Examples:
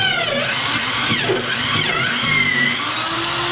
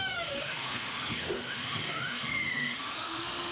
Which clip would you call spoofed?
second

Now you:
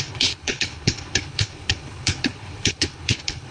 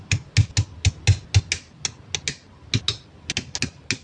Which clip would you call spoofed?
first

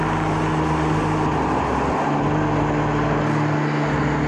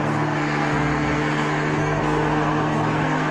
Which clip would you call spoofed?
second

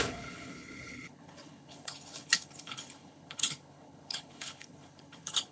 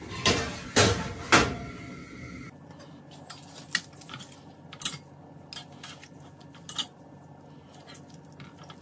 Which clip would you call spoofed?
first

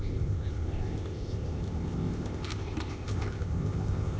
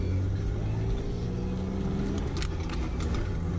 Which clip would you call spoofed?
first